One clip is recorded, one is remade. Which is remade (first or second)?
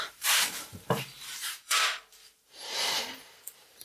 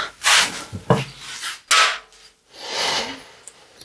first